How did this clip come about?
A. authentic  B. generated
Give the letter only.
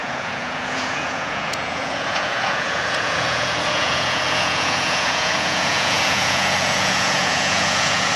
B